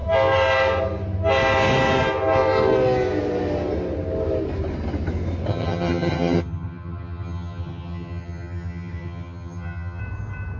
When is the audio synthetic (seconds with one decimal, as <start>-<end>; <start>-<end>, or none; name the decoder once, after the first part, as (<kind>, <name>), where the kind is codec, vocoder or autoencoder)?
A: 5.5-10.0 (vocoder, HiFi-GAN)